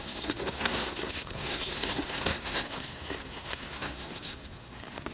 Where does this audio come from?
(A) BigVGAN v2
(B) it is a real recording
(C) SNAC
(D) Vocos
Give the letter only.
C